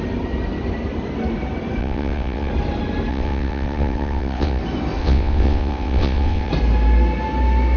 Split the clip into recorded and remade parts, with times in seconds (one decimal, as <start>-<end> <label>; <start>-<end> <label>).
0.0-1.8 recorded; 1.8-2.5 remade; 2.5-3.1 recorded; 3.1-4.6 remade; 4.6-5.0 recorded; 5.0-6.5 remade; 6.5-7.8 recorded